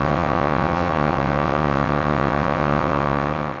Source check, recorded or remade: remade